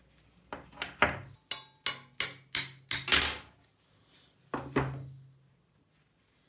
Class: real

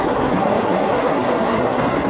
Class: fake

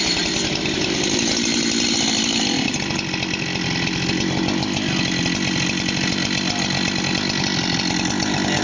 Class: real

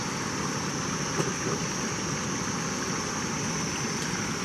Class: real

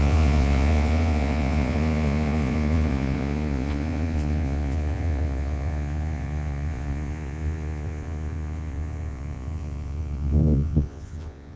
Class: fake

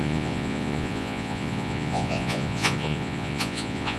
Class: fake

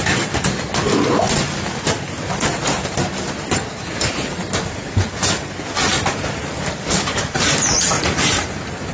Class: real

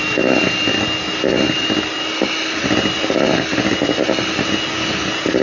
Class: real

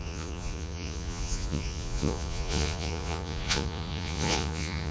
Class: fake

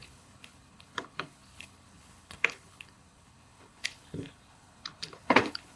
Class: fake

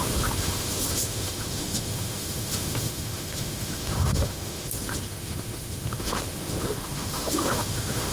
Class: fake